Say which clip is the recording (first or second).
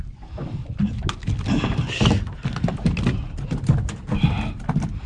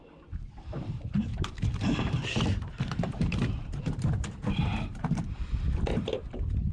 first